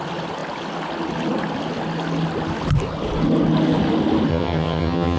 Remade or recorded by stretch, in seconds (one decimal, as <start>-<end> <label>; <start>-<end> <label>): 0.0-4.3 recorded; 4.3-5.2 remade